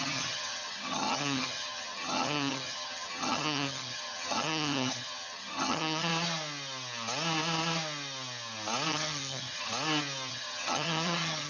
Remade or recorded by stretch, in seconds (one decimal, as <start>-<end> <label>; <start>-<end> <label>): 0.0-6.1 remade; 6.1-8.9 recorded; 8.9-9.7 remade; 9.7-10.3 recorded; 10.3-11.5 remade